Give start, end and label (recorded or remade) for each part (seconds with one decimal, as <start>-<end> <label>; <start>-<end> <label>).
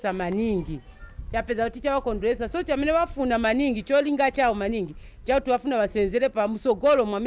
0.0-7.3 recorded